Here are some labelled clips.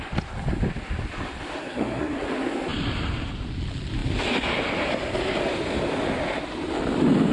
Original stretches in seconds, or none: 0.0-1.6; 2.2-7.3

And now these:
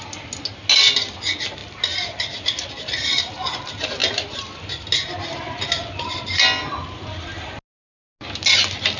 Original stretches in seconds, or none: 0.0-9.0

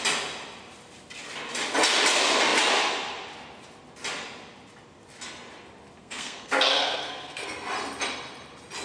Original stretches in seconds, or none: 0.0-6.0; 7.7-8.8

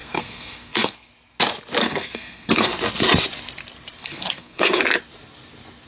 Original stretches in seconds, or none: 1.1-1.8; 2.7-4.0; 4.8-5.9

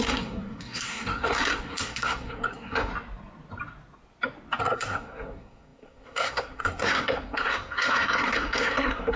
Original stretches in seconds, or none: 2.9-4.6